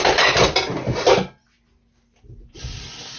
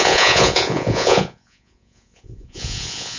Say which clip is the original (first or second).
first